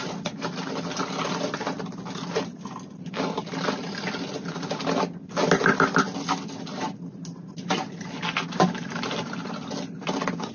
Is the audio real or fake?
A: real